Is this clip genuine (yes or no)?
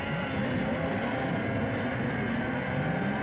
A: yes